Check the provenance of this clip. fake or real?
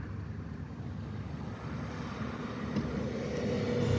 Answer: real